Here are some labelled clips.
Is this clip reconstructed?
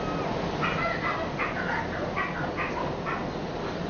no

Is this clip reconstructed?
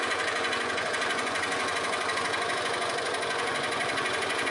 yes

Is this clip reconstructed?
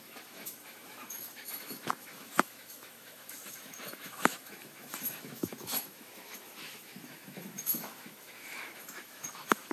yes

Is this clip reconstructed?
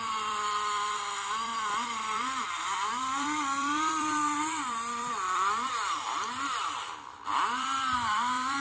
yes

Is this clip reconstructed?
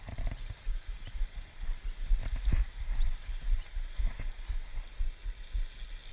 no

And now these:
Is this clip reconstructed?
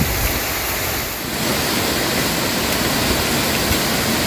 no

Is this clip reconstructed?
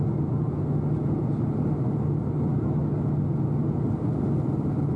no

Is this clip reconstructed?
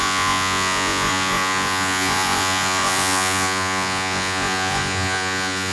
yes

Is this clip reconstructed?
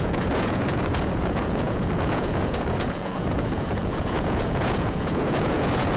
yes